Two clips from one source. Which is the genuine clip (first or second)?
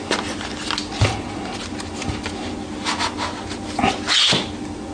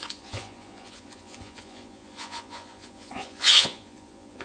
first